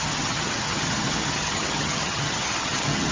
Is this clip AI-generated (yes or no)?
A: yes